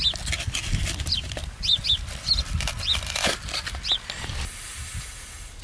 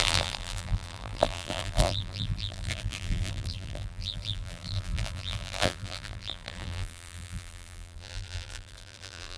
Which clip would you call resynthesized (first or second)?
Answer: second